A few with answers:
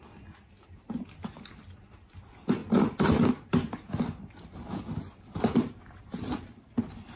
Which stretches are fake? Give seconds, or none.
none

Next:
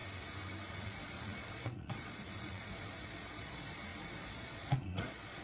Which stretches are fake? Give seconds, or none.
0.7-5.4